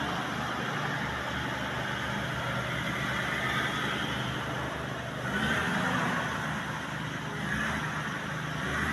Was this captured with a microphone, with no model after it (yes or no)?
yes